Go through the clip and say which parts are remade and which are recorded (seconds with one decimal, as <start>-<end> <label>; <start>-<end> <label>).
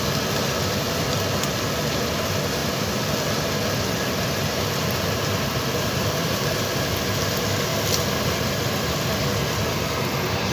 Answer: 0.0-2.6 recorded; 2.6-6.6 remade; 6.6-10.5 recorded